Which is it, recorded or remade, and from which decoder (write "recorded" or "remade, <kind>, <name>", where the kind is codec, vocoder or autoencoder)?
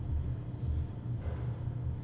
recorded